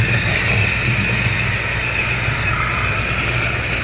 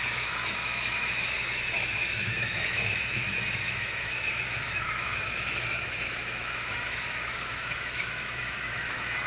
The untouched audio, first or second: first